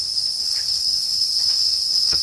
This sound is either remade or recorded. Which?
remade